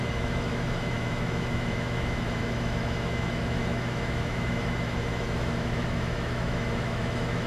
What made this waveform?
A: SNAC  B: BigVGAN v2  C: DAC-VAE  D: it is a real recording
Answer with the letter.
C